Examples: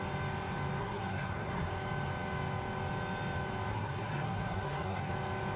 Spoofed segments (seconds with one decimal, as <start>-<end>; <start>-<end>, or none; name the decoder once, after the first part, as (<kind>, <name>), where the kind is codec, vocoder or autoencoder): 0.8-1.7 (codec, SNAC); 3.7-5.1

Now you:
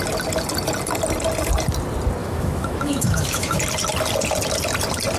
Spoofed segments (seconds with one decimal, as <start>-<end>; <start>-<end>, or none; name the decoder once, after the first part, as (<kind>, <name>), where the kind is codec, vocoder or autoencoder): 2.2-3.6 (autoencoder, DAC-VAE)

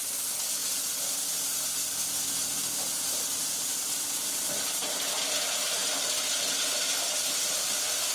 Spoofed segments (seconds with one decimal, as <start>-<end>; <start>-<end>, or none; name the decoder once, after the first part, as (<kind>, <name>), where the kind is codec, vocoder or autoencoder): none